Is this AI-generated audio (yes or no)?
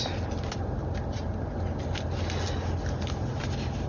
no